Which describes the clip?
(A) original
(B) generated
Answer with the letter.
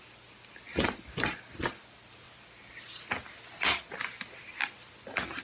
A